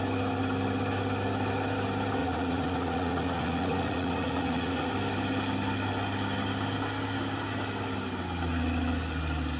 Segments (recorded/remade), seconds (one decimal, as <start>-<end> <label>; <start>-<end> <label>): 0.0-2.2 recorded; 2.2-4.9 remade; 4.9-9.6 recorded

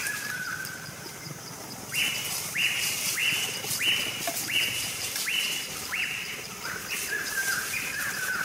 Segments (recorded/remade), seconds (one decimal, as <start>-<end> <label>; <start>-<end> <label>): 0.0-3.2 remade; 3.2-4.0 recorded; 4.0-8.4 remade

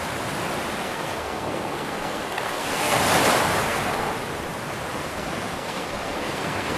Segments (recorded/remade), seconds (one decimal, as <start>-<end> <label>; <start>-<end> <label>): 0.0-0.8 recorded; 0.8-3.0 remade; 3.0-3.6 recorded; 3.6-4.1 remade; 4.1-4.9 recorded; 4.9-6.8 remade

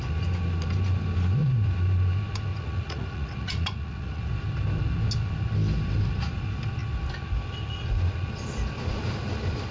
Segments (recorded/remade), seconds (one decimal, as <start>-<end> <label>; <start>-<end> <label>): 0.0-2.5 recorded; 2.5-4.2 remade; 4.2-9.7 recorded

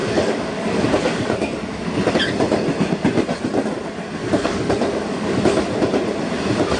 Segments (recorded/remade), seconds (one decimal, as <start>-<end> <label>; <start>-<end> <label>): 0.0-2.1 remade; 2.1-4.2 recorded; 4.2-5.4 remade; 5.4-6.8 recorded

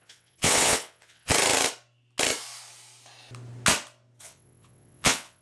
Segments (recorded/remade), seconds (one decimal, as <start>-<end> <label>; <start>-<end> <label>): 0.0-1.3 remade; 1.3-4.2 recorded; 4.2-5.4 remade

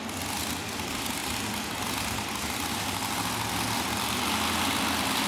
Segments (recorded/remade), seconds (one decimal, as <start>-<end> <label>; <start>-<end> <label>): 0.0-5.3 recorded

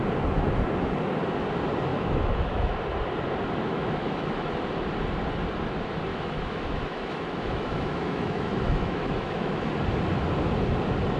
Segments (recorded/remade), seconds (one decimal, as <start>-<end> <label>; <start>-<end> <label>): 0.0-1.9 recorded; 1.9-2.8 remade; 2.8-3.7 recorded; 3.7-4.5 remade; 4.5-6.1 recorded; 6.1-9.7 remade; 9.7-11.2 recorded